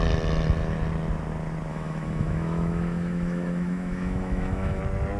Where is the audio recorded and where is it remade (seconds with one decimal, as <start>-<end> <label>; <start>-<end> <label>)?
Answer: 0.0-1.7 recorded; 1.7-4.8 remade; 4.8-5.2 recorded

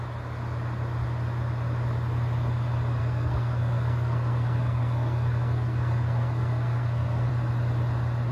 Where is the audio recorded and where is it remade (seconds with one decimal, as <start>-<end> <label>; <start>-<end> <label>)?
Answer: 0.0-3.0 recorded; 3.0-7.3 remade; 7.3-8.3 recorded

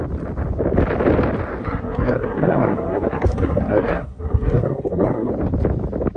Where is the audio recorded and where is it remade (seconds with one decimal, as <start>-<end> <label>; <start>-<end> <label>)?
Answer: 0.0-1.6 recorded; 1.6-5.3 remade; 5.3-6.2 recorded

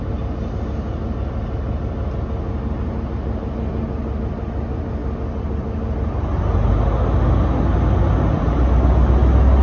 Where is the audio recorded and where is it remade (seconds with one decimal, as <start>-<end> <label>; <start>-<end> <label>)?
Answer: 0.0-9.6 recorded